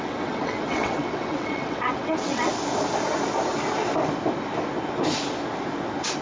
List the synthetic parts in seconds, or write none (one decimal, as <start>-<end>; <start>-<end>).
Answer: 0.0-2.5